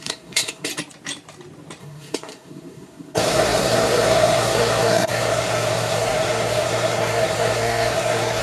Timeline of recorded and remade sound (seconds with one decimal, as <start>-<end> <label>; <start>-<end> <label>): 0.0-0.7 remade; 0.7-1.8 recorded; 1.8-8.4 remade